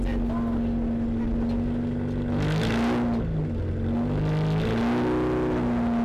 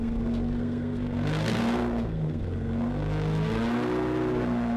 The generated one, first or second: second